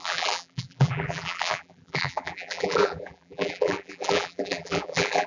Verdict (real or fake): fake